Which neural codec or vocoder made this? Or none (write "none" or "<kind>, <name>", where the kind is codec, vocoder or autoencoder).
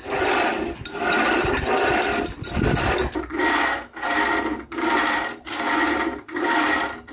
none